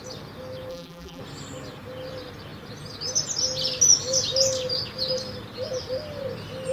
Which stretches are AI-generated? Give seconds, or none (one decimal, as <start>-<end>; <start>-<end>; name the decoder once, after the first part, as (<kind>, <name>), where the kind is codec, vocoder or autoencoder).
0.7-1.2 (vocoder, BigVGAN v2)